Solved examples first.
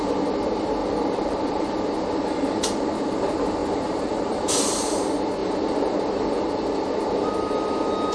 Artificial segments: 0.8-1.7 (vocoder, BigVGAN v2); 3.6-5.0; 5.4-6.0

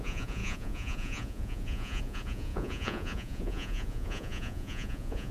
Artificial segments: 0.0-5.3 (vocoder, Vocos)

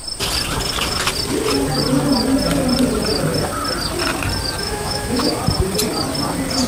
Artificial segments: 4.6-5.4 (autoencoder, DAC-VAE)

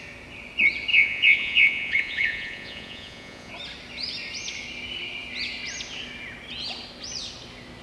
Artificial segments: 0.9-3.5 (vocoder, Vocos)

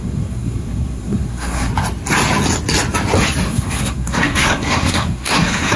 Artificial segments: 0.0-1.7 (codec, SNAC); 3.5-5.8

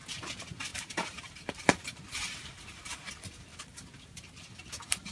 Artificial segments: 0.7-3.1 (vocoder, BigVGAN v2); 3.5-4.3

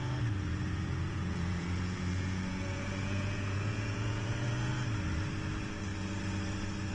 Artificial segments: 0.6-4.7 (vocoder, Vocos)

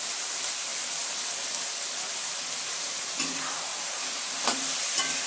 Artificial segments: 0.0-0.7 (vocoder, BigVGAN v2); 2.8-3.7